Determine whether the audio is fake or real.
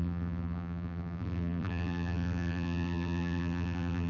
fake